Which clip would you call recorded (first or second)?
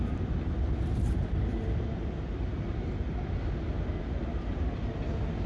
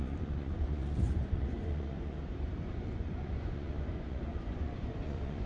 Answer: first